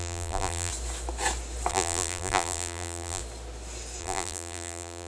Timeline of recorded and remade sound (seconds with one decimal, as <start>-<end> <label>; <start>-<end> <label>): 0.0-0.7 remade; 0.7-1.7 recorded; 1.7-3.2 remade; 3.2-4.0 recorded; 4.0-5.1 remade